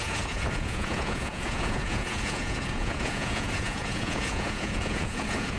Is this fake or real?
fake